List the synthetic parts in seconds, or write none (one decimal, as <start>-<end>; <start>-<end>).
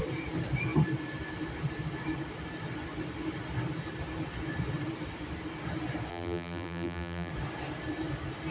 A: 6.1-7.3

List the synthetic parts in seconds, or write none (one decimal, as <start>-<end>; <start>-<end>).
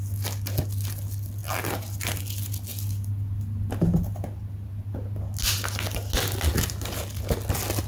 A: none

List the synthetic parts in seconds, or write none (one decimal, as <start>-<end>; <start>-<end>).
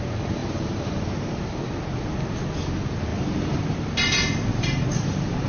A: 0.4-1.4; 3.1-3.6; 4.5-5.5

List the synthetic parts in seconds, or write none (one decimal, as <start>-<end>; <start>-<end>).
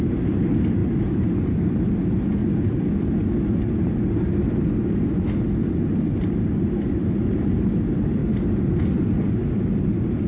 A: 0.8-1.8; 7.0-7.7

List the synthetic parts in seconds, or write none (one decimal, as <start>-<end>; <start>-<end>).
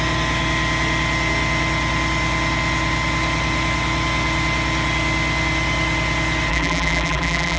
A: 6.5-7.6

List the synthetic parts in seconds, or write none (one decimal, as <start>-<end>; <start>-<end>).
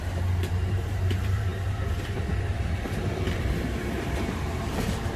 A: 0.0-5.2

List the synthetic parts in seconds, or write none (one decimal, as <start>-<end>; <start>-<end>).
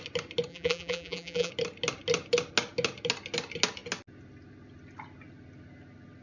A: 0.5-1.5